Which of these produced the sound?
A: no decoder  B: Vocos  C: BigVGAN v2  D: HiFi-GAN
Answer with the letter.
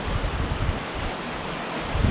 A